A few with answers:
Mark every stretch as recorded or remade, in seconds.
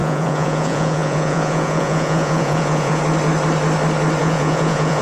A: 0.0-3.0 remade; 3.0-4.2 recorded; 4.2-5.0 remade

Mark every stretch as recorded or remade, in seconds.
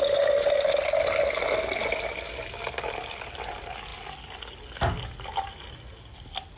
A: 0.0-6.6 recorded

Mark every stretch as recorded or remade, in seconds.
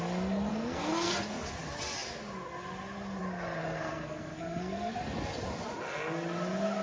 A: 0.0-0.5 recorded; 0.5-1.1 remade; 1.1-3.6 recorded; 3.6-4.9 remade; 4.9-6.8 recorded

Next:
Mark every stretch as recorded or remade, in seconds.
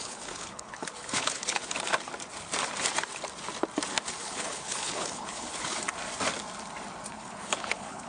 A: 0.0-1.6 remade; 1.6-4.2 recorded; 4.2-5.8 remade; 5.8-7.1 recorded; 7.1-8.1 remade